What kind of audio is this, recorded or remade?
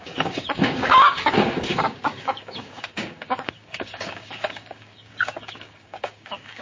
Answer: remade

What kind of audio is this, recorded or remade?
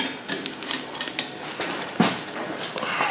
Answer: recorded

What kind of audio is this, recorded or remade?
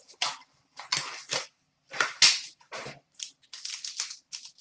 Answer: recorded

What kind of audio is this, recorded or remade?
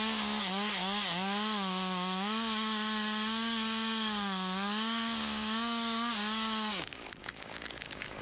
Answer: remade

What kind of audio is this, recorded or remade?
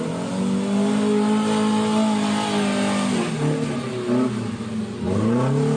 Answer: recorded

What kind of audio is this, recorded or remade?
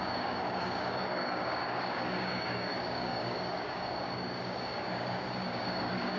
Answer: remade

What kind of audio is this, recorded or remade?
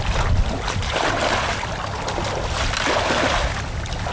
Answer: recorded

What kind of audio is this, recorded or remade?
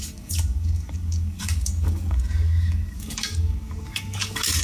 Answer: remade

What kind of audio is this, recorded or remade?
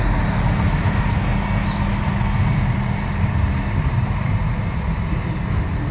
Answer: recorded